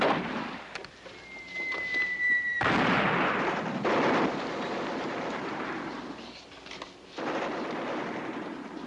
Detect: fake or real real